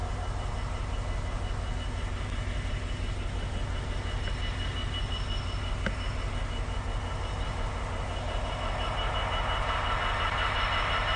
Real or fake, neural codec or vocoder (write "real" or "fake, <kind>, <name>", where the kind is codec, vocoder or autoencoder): real